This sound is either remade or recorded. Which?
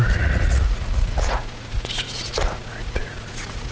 remade